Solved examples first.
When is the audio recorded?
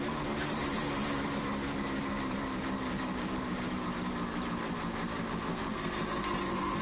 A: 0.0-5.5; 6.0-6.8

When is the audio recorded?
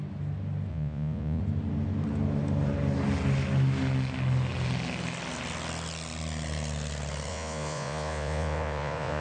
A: 0.0-0.7; 1.4-7.3